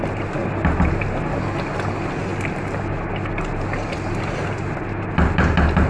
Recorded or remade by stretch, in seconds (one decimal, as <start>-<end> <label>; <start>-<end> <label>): 0.0-5.9 recorded